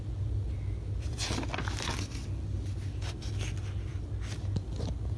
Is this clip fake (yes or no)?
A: no